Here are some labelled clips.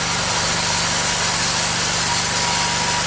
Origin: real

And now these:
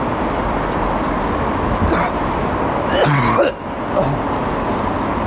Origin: real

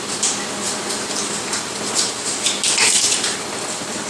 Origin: real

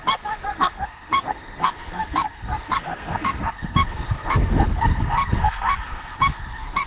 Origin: fake